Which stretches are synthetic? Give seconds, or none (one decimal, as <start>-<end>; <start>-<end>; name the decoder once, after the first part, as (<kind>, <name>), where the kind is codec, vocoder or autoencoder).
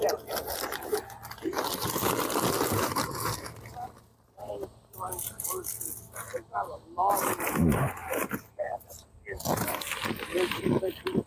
none